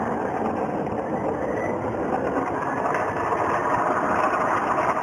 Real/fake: fake